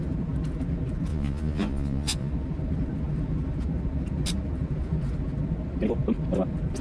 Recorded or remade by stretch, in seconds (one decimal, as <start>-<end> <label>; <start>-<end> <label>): 0.0-1.1 recorded; 1.1-2.3 remade; 2.3-6.8 recorded